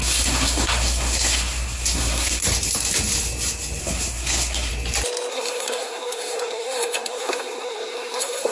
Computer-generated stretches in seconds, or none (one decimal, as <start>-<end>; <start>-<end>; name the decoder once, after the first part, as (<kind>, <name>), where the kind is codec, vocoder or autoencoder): 0.0-2.4 (codec, SNAC); 3.8-4.7; 5.3-8.5